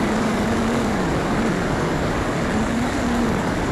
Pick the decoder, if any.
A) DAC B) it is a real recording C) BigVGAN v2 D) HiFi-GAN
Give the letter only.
A